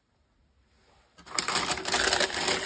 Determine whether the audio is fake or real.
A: real